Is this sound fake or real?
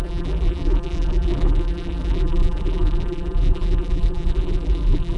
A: fake